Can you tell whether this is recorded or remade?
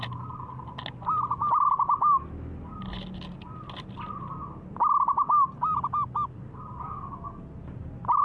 recorded